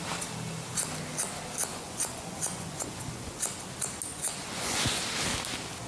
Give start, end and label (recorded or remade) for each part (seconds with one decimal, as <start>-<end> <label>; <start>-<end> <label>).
0.0-1.7 recorded; 1.7-3.4 remade; 3.4-4.1 recorded; 4.1-5.0 remade; 5.0-5.9 recorded